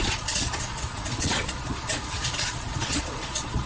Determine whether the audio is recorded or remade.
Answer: remade